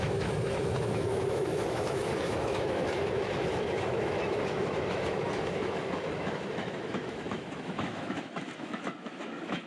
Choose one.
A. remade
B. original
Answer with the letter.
A